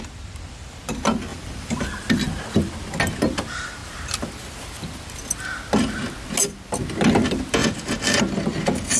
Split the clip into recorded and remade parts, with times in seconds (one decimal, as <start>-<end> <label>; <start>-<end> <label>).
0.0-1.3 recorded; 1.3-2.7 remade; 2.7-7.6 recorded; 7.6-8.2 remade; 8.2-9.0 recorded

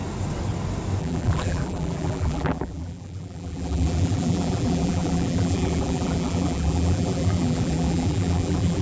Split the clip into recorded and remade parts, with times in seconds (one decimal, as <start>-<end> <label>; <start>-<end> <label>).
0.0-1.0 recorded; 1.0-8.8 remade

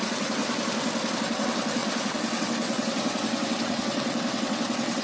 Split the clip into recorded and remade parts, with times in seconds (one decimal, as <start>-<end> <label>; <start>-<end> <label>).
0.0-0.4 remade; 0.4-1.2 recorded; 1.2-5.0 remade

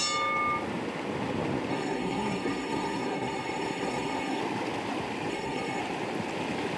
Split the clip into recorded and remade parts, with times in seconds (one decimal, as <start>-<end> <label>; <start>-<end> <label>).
0.0-1.7 recorded; 1.7-4.4 remade; 4.4-5.3 recorded; 5.3-5.8 remade; 5.8-6.8 recorded